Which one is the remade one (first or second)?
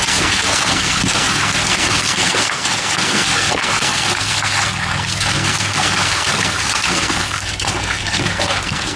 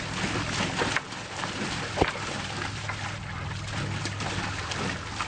first